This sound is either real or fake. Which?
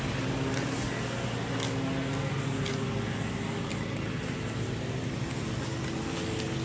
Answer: real